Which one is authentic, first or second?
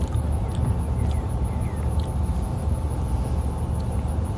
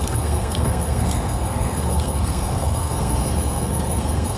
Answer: first